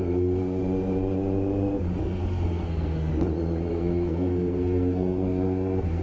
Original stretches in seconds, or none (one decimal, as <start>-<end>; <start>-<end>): 0.6-2.2; 3.1-3.7